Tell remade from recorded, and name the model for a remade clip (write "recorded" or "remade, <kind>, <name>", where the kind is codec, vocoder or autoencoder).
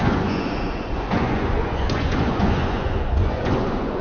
remade, vocoder, Vocos